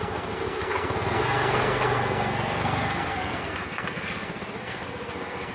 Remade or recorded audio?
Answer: remade